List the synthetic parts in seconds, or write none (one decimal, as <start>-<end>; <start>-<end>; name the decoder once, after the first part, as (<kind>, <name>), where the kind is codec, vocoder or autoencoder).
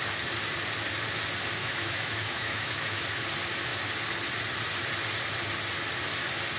1.6-3.0 (autoencoder, DAC-VAE)